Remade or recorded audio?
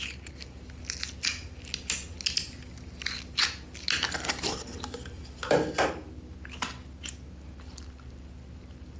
recorded